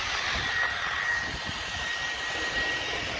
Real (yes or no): yes